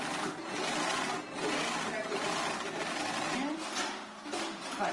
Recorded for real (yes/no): yes